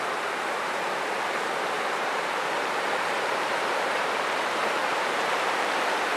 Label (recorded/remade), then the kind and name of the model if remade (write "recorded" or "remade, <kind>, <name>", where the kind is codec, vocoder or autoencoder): remade, vocoder, BigVGAN v2